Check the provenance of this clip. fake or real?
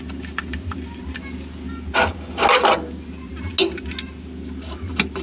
real